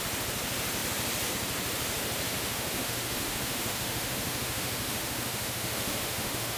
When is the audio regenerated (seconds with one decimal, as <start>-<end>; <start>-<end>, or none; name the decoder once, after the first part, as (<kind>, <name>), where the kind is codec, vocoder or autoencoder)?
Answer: 2.3-6.6 (autoencoder, DAC-VAE)